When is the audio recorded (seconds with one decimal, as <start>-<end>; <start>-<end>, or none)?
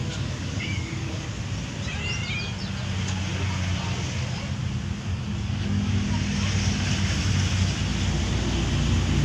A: 1.4-5.1; 5.9-9.2